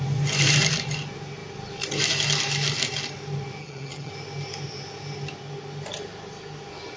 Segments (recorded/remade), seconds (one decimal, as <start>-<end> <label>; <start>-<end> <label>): 0.0-3.6 recorded; 3.6-4.1 remade; 4.1-7.0 recorded